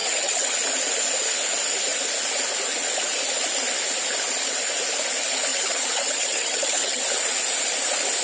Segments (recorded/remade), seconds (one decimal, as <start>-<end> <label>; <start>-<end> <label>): 0.0-0.5 remade; 0.5-5.5 recorded; 5.5-7.0 remade; 7.0-8.2 recorded